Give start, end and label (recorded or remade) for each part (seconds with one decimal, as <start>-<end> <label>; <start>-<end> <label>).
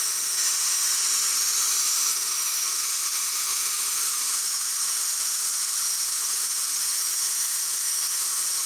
0.0-0.8 remade; 0.8-1.8 recorded; 1.8-8.7 remade